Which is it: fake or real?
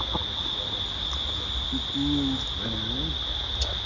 real